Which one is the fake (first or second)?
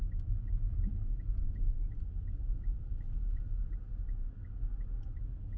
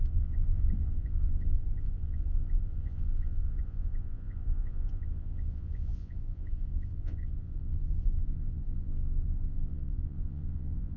second